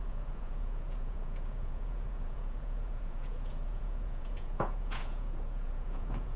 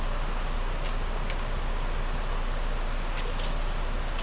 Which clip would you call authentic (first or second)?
second